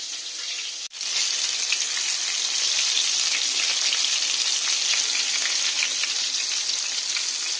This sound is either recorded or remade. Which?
recorded